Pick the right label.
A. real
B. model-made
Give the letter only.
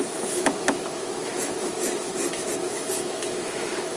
B